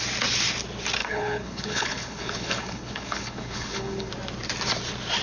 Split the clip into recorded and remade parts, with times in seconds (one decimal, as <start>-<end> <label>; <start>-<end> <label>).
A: 0.0-1.0 recorded; 1.0-4.1 remade; 4.1-5.2 recorded